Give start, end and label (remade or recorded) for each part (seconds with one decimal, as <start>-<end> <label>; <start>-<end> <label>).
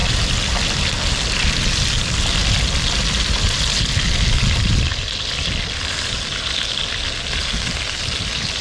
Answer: 0.0-8.6 recorded